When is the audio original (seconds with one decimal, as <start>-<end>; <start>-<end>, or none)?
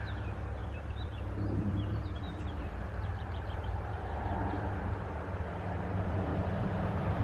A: 0.0-0.6; 4.9-6.3